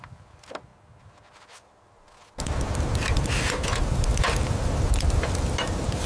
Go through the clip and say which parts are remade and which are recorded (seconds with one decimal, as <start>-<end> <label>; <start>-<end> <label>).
0.0-6.1 recorded